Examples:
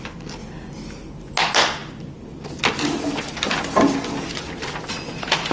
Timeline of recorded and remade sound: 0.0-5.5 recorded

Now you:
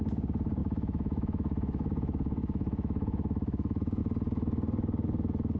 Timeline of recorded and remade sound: 0.0-0.6 recorded; 0.6-4.0 remade; 4.0-5.6 recorded

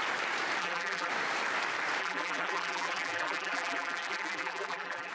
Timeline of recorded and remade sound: 0.0-0.6 recorded; 0.6-1.1 remade; 1.1-2.0 recorded; 2.0-5.1 remade

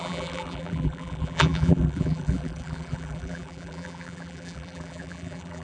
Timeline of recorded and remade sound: 0.0-5.6 remade

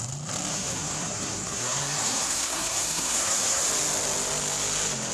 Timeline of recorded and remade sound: 0.0-0.5 recorded; 0.5-3.6 remade; 3.6-5.1 recorded

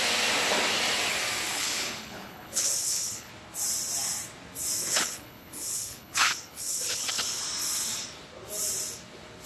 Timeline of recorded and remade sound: 0.0-1.5 recorded; 1.5-3.3 remade; 3.3-4.8 recorded; 4.8-7.4 remade; 7.4-9.5 recorded